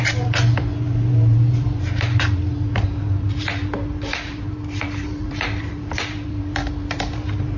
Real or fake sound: fake